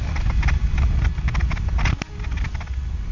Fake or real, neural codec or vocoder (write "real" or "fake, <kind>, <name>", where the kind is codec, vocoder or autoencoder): real